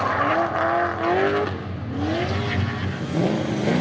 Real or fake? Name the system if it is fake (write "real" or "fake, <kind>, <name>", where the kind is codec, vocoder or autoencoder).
real